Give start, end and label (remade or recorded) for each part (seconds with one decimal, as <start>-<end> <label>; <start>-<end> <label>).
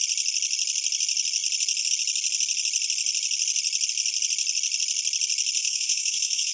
0.0-5.6 recorded; 5.6-6.5 remade